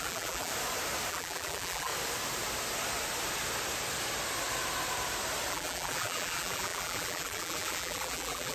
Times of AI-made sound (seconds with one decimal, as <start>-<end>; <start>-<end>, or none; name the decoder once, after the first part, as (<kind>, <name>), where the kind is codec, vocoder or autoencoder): 0.0-0.5 (vocoder, BigVGAN v2); 1.1-1.9; 5.5-8.5